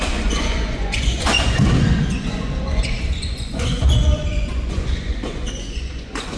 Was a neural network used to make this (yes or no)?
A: yes